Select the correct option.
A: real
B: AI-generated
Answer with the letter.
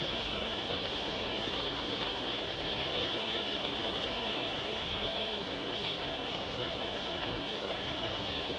B